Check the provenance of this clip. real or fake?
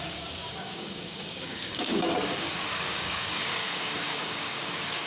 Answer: fake